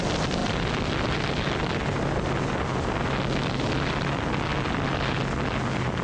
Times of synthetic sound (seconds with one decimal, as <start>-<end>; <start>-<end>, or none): 0.0-2.7; 3.4-4.5; 5.6-6.0